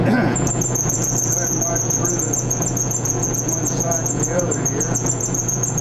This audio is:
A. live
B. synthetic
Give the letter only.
B